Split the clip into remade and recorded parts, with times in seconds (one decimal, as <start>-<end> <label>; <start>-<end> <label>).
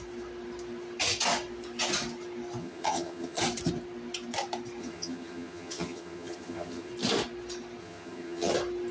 0.0-2.6 recorded; 2.6-3.4 remade; 3.4-4.8 recorded; 4.8-6.9 remade; 6.9-7.8 recorded; 7.8-8.5 remade; 8.5-8.9 recorded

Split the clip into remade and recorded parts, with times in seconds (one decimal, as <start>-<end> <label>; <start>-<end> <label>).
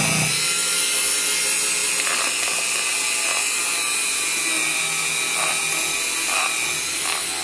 0.0-7.4 recorded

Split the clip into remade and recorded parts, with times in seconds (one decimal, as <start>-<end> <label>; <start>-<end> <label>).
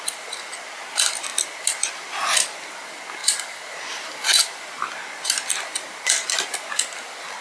0.0-7.4 recorded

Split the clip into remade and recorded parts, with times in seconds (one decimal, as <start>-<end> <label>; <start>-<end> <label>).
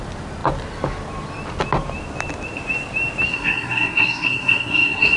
0.0-3.3 recorded; 3.3-5.2 remade